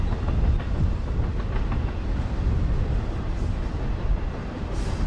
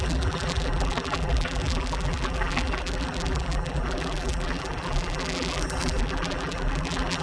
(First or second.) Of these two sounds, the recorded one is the first